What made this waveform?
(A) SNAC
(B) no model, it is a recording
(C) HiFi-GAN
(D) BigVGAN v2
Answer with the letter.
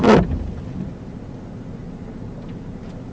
B